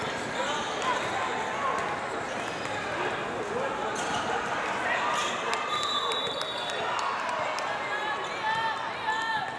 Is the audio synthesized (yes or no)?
no